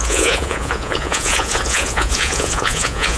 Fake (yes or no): yes